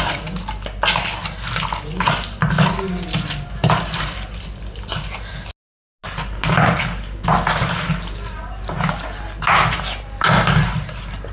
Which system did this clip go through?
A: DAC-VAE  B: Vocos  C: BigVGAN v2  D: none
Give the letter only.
D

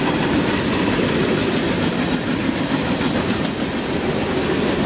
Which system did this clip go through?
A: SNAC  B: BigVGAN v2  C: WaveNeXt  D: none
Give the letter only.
D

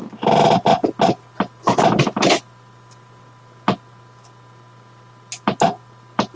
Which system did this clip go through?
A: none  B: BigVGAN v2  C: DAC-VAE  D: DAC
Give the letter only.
A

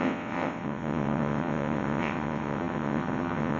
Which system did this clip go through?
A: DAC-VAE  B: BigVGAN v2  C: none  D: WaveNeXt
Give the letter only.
D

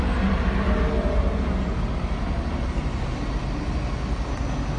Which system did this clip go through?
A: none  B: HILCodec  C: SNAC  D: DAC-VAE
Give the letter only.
A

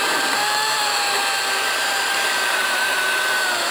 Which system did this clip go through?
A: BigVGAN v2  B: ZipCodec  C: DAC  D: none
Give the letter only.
A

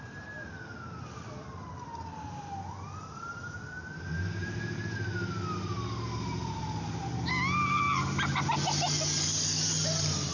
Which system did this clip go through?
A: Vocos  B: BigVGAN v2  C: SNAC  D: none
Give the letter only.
D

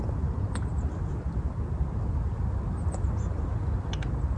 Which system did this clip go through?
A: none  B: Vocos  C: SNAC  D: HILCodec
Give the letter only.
A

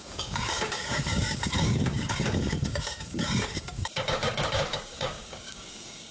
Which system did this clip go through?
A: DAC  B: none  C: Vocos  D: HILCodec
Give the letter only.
A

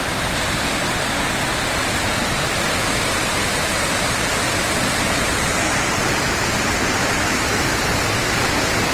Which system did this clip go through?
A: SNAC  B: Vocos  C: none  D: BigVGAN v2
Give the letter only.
C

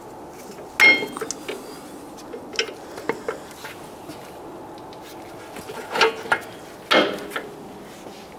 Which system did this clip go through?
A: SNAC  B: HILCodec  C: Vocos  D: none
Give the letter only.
D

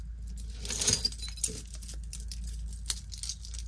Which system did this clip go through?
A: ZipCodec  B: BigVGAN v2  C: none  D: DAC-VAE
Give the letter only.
C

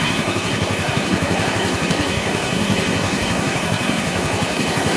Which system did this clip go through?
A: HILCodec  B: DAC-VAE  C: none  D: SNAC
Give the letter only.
D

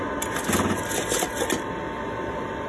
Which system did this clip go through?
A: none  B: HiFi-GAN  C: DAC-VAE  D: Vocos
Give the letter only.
A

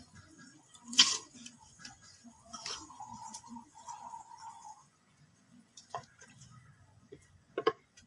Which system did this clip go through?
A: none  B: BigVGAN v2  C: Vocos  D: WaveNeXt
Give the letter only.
C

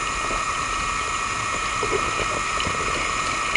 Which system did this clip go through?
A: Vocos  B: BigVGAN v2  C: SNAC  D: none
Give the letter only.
D